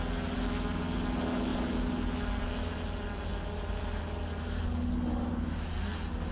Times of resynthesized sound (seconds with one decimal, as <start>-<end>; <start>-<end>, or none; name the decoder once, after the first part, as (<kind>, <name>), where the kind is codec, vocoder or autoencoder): none